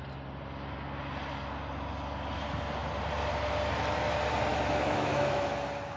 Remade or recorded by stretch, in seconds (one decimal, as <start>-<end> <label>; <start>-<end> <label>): 0.0-4.5 recorded; 4.5-5.5 remade; 5.5-6.0 recorded